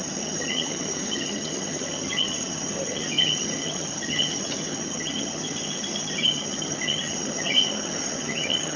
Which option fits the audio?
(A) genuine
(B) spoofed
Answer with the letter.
B